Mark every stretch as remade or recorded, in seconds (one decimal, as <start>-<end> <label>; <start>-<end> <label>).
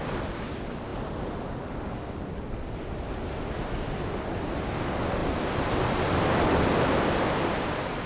0.0-8.1 recorded